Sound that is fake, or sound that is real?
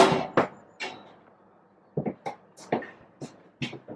real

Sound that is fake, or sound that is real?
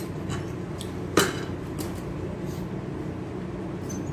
real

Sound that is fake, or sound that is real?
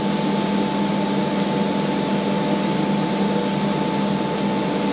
real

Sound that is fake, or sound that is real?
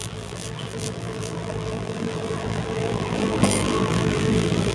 fake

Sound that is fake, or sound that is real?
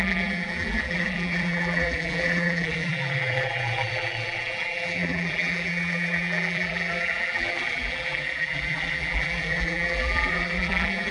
fake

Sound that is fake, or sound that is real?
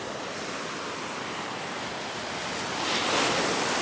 real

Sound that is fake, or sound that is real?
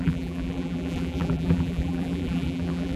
fake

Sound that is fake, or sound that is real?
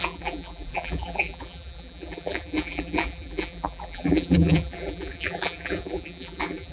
fake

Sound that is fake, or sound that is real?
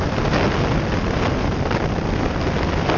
real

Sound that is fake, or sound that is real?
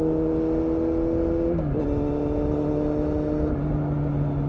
real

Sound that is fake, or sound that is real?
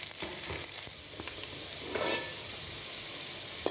fake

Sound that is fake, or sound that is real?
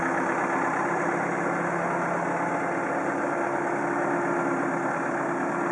real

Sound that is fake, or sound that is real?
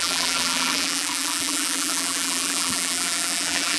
fake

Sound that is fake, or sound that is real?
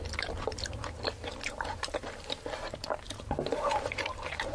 fake